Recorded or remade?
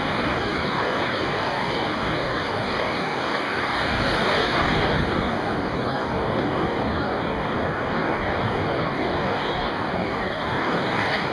remade